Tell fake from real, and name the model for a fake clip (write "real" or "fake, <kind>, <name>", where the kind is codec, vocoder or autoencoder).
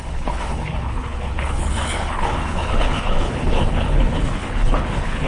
fake, codec, HILCodec